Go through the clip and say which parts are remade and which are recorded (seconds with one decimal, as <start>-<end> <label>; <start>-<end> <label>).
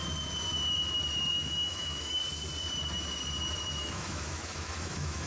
0.0-1.3 recorded; 1.3-2.2 remade; 2.2-3.8 recorded; 3.8-5.3 remade